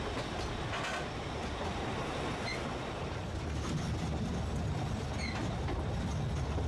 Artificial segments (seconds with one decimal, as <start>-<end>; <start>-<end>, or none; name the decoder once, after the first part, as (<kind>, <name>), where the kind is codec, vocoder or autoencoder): none